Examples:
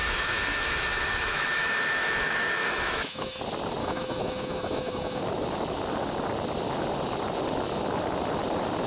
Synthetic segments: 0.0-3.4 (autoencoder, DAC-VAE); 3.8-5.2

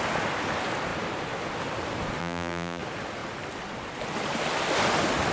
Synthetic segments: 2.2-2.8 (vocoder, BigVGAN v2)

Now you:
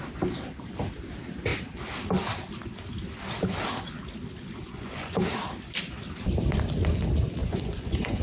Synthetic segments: 4.6-5.3 (vocoder, Vocos); 7.4-8.2

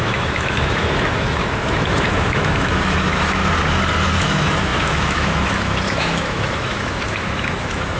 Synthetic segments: 0.0-3.4 (autoencoder, DAC-VAE); 4.2-8.0